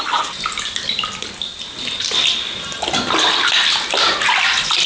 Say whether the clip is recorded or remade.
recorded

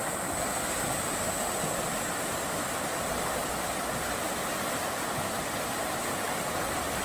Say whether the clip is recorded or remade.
recorded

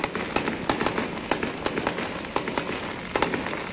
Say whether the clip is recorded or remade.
recorded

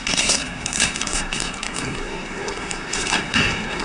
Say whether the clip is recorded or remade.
remade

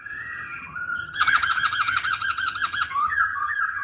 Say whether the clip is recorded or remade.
remade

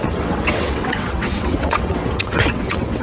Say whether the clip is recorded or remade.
remade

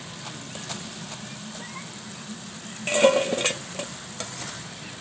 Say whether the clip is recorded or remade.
recorded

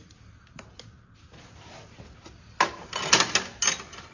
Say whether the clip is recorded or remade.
recorded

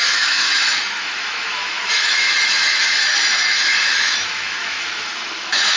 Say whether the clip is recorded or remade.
remade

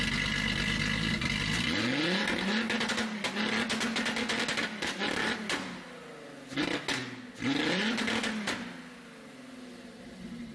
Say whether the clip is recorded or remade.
recorded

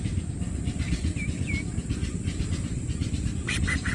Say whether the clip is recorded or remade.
remade